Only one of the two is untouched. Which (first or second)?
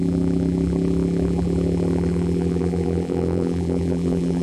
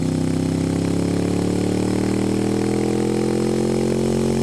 second